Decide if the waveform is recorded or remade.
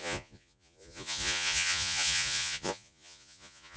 remade